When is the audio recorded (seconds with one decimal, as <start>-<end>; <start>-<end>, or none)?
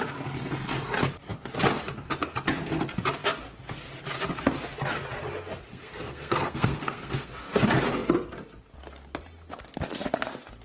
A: 0.0-5.7; 7.3-10.6